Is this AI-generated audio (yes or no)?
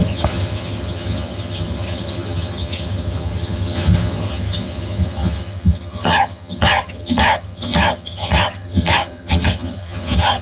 yes